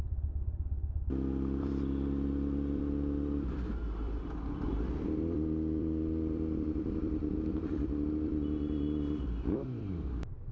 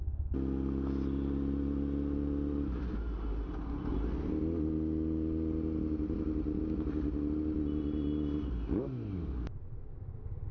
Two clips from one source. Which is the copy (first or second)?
first